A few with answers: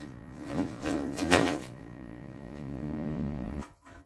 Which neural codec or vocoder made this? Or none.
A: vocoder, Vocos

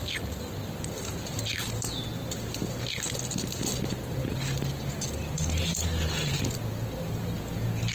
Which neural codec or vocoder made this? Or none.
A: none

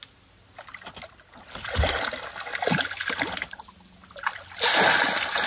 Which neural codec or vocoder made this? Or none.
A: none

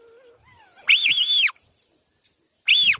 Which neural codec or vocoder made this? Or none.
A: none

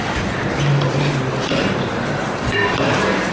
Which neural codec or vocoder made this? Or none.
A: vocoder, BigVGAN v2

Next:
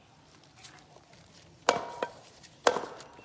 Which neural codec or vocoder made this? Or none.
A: none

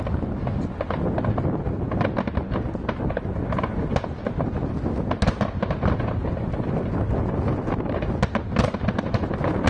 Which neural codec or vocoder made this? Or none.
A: none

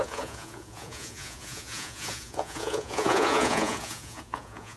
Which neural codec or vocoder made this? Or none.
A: vocoder, Vocos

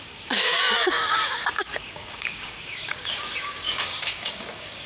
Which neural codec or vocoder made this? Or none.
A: codec, DAC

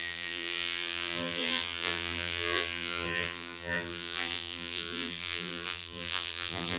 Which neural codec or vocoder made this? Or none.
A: vocoder, BigVGAN v2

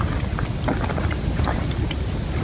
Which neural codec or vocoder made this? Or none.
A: none